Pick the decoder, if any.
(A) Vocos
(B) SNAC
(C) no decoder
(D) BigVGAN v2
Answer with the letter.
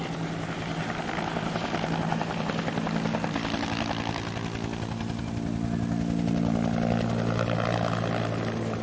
C